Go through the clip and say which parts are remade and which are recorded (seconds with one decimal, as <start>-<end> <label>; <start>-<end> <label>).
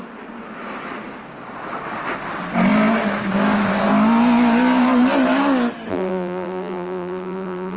0.0-5.9 recorded; 5.9-7.8 remade